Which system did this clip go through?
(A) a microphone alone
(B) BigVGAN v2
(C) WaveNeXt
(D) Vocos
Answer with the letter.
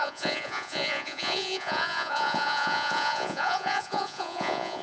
D